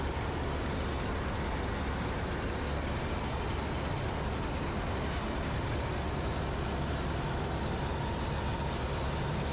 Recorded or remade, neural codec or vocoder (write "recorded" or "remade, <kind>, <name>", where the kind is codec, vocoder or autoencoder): recorded